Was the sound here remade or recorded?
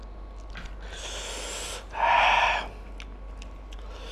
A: recorded